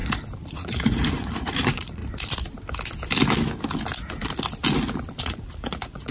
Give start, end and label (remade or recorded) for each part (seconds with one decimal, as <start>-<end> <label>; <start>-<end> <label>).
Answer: 0.0-0.5 recorded; 0.5-2.0 remade; 2.0-5.2 recorded; 5.2-6.1 remade

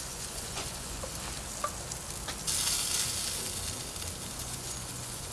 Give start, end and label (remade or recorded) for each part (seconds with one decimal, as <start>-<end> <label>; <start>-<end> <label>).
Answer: 0.0-1.1 remade; 1.1-4.3 recorded; 4.3-5.3 remade

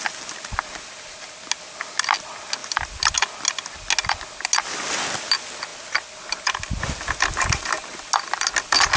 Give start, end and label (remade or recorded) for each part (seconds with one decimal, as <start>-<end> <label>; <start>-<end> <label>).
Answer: 0.0-9.0 recorded

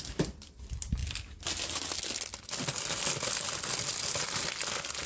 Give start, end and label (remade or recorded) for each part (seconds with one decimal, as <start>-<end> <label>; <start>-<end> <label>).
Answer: 0.0-5.1 recorded

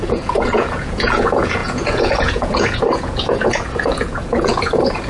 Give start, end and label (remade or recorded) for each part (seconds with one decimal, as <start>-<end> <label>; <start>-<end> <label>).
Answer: 0.0-5.1 remade

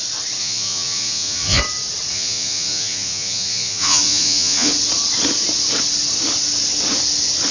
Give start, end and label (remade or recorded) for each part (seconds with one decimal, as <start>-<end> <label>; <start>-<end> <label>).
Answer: 0.0-0.4 recorded; 0.4-1.6 remade; 1.6-2.1 recorded; 2.1-4.7 remade; 4.7-7.5 recorded

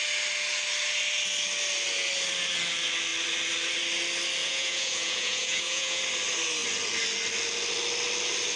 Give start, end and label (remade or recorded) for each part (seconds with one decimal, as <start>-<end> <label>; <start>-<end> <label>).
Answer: 0.0-4.4 recorded; 4.4-6.0 remade; 6.0-8.6 recorded